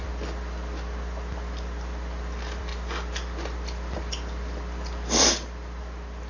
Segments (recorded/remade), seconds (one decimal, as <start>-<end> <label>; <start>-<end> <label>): 0.0-6.3 recorded